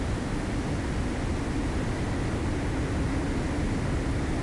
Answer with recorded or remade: recorded